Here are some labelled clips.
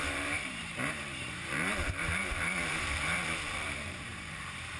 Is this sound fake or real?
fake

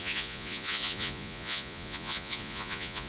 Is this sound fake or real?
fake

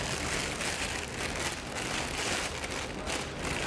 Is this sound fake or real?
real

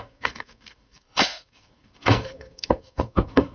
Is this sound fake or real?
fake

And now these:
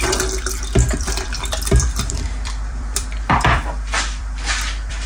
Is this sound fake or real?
fake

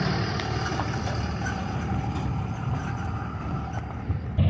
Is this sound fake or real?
real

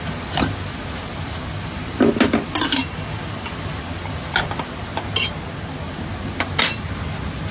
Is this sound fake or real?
real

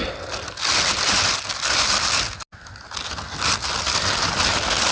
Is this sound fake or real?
real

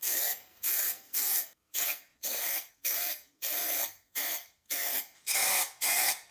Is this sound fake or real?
fake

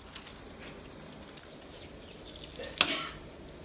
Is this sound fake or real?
real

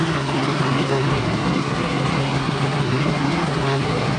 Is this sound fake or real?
fake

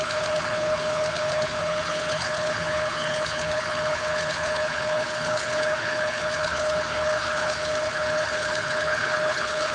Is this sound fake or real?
fake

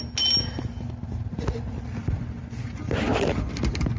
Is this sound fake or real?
real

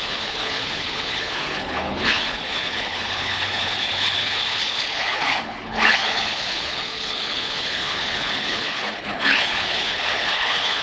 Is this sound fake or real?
fake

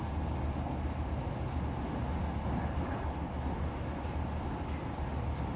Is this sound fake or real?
real